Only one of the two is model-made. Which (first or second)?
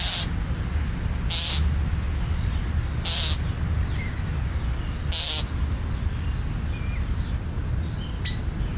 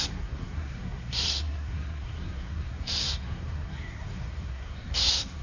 second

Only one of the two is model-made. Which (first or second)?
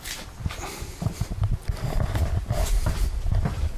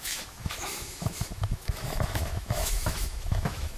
second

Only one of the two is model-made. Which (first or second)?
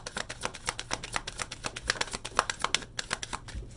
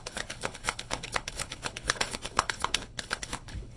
second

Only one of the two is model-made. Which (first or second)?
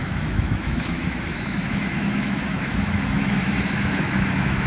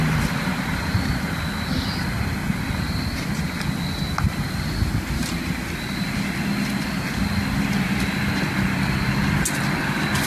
first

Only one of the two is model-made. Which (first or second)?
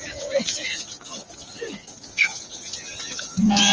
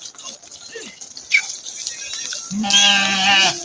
first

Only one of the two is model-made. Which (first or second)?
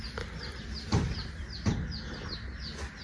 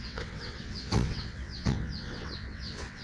second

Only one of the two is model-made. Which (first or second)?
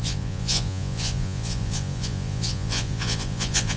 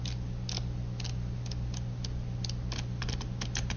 first